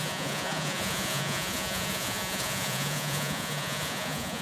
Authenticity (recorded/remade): remade